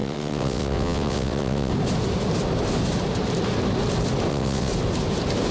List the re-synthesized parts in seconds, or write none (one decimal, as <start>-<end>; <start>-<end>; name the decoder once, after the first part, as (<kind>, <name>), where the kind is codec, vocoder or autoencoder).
0.0-1.7 (vocoder, WaveNeXt); 4.3-4.7